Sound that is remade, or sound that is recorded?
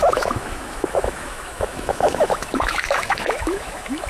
remade